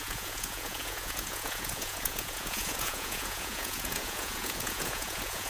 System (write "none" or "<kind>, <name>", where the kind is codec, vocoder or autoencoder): vocoder, Vocos